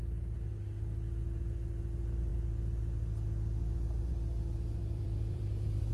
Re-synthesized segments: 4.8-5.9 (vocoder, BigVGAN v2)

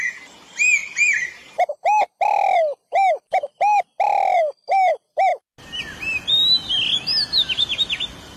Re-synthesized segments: 0.8-2.2 (vocoder, BigVGAN v2)

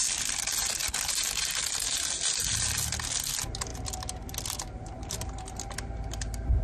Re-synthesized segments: none

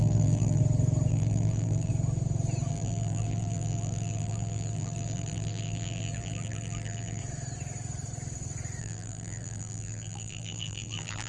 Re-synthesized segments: 0.0-0.6 (vocoder, BigVGAN v2); 1.1-1.9; 2.7-7.2; 8.8-11.3

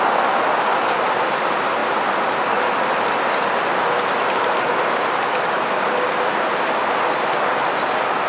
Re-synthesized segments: 1.8-5.8 (vocoder, BigVGAN v2)

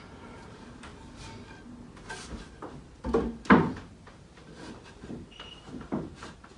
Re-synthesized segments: 0.0-0.9 (vocoder, BigVGAN v2); 4.9-6.6

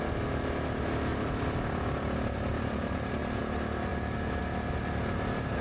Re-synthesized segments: 1.1-3.4 (vocoder, BigVGAN v2)

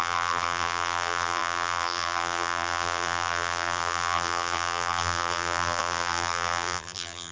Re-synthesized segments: 0.0-7.3 (vocoder, BigVGAN v2)